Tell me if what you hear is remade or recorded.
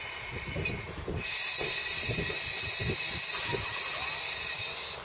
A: recorded